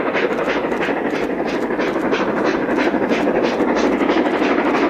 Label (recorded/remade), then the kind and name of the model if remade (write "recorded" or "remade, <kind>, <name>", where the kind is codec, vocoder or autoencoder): recorded